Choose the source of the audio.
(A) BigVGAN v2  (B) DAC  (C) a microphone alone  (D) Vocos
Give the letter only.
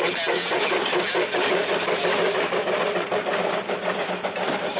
C